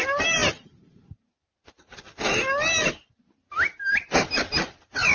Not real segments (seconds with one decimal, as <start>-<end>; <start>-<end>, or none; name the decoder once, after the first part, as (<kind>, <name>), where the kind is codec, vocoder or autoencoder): none